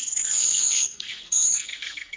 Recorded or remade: remade